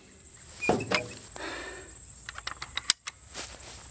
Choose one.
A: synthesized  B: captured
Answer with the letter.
B